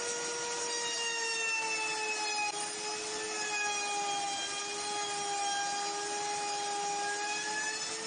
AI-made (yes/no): no